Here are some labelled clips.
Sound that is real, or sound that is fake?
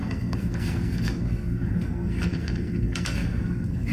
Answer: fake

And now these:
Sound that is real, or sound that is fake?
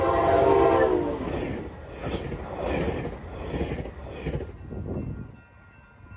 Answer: real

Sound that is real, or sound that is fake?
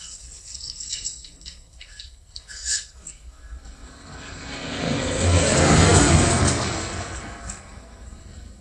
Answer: fake